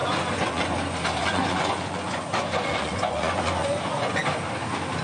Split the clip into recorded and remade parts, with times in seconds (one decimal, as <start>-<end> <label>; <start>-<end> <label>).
0.0-0.7 remade; 0.7-1.2 recorded; 1.2-4.2 remade; 4.2-5.0 recorded